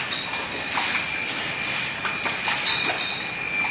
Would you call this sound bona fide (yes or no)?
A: yes